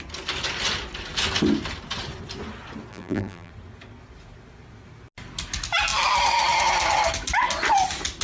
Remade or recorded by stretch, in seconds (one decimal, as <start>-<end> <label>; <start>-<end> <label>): 0.0-2.9 recorded; 2.9-3.5 remade; 3.5-8.2 recorded